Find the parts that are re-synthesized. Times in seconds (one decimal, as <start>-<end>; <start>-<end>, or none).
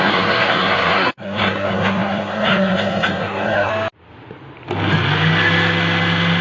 0.0-3.7